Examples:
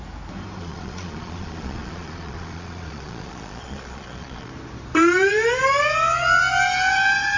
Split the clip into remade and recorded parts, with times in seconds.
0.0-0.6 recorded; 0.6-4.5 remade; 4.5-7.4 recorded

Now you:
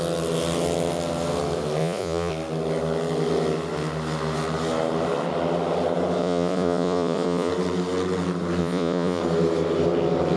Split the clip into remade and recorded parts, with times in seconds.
0.0-1.8 recorded; 1.8-2.3 remade; 2.3-6.2 recorded; 6.2-7.5 remade; 7.5-8.6 recorded; 8.6-9.2 remade; 9.2-10.4 recorded

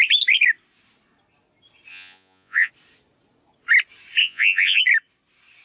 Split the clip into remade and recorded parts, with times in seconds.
0.0-1.9 recorded; 1.9-2.7 remade; 2.7-4.2 recorded; 4.2-4.8 remade; 4.8-5.6 recorded

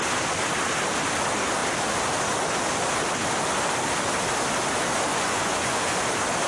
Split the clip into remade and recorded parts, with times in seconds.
0.0-5.1 recorded; 5.1-5.8 remade; 5.8-6.5 recorded